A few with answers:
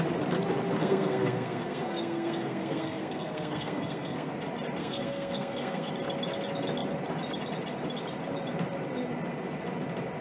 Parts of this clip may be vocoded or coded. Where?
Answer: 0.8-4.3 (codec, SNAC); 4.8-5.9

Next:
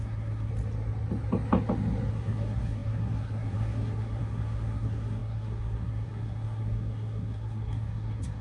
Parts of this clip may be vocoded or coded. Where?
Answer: 0.0-0.5 (codec, SNAC); 2.1-8.4

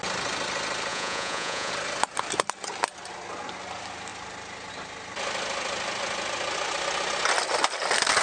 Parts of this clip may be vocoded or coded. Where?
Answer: 0.9-1.7 (vocoder, Vocos)

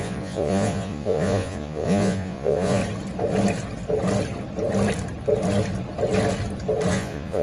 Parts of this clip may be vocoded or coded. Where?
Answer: 0.0-2.8 (vocoder, Vocos); 6.9-7.4